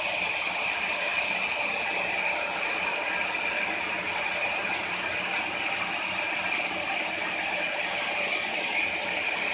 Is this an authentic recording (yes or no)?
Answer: yes